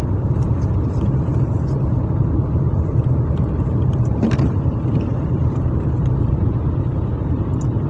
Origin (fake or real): fake